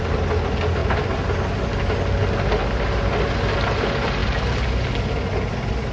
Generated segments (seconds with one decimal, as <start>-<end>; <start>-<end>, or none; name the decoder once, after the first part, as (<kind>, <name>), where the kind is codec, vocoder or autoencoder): none